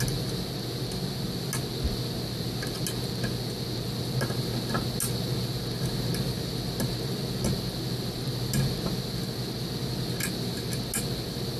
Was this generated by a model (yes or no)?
no